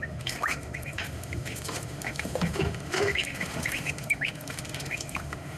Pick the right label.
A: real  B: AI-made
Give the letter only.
B